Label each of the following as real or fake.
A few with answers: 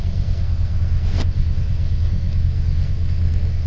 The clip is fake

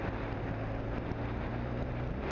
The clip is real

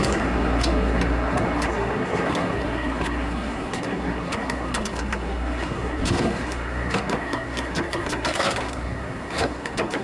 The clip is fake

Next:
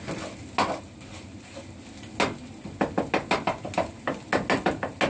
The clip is real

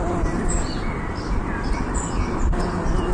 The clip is real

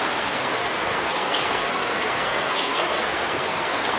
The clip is fake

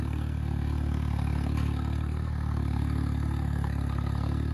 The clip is fake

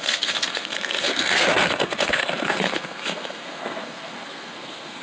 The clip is fake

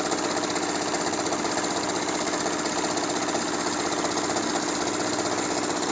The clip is real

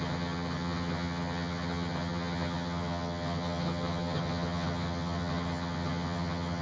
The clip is fake